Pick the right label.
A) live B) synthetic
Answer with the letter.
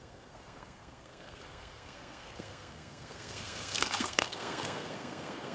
B